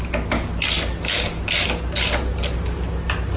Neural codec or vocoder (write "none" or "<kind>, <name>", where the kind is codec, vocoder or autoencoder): none